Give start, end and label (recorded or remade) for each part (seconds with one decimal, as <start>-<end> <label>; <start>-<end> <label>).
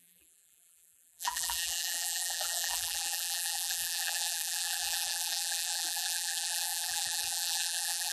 0.0-8.1 remade